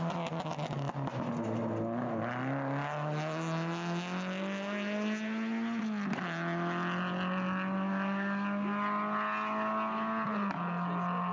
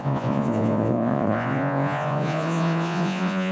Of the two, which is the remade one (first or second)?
second